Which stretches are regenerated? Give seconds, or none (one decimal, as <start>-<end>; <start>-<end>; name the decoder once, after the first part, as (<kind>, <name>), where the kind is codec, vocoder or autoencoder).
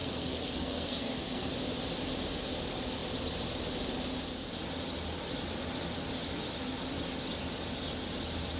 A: 0.0-1.5 (codec, SNAC)